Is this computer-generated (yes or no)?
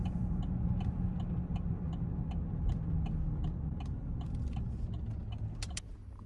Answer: no